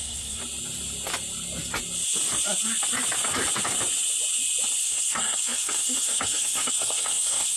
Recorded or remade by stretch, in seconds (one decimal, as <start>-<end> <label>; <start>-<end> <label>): 0.0-0.4 remade; 0.4-4.8 recorded; 4.8-7.6 remade

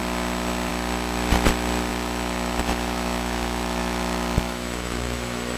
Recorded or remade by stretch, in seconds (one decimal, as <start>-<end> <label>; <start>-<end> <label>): 0.0-1.9 recorded; 1.9-5.6 remade

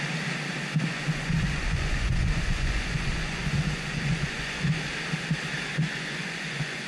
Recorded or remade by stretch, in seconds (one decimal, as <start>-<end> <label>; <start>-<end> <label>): 0.0-0.9 recorded; 0.9-4.8 remade; 4.8-5.7 recorded; 5.7-6.9 remade